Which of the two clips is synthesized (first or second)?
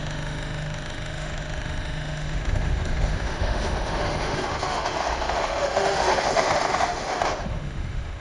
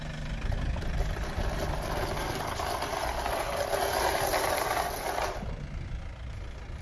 first